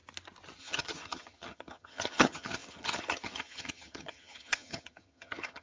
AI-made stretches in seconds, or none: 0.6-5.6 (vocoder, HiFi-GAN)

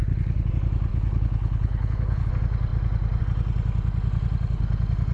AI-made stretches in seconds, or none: 0.0-0.5 (codec, HILCodec); 0.9-2.3

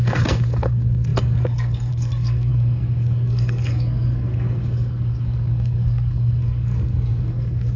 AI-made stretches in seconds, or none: 0.0-7.8 (codec, SNAC)

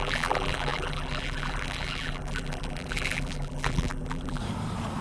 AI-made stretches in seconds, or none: 0.0-4.4 (vocoder, BigVGAN v2)

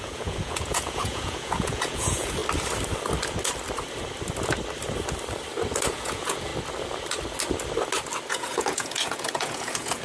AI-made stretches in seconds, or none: 0.0-2.4 (vocoder, Vocos); 5.9-6.5; 8.3-10.0

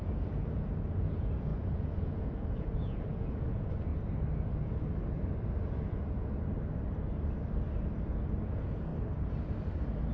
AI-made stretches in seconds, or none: 0.0-3.9 (vocoder, Vocos); 8.4-8.9

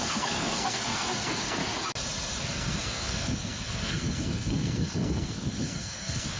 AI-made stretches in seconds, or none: 0.0-1.6 (codec, SNAC); 2.4-6.4